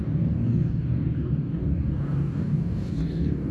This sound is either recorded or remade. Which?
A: remade